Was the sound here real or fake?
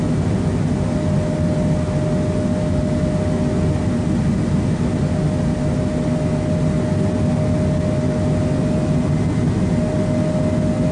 real